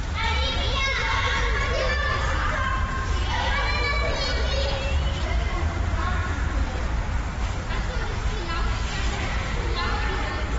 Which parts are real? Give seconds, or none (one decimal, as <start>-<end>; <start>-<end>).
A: 0.0-10.6